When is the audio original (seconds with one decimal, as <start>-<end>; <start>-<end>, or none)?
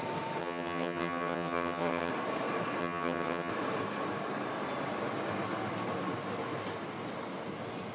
0.0-0.4; 2.1-2.8; 3.5-7.9